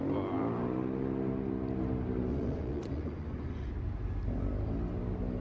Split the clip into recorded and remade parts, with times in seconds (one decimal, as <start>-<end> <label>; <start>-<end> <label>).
0.0-2.3 recorded; 2.3-3.7 remade; 3.7-5.4 recorded